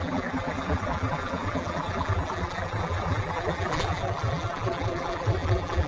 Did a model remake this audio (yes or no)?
yes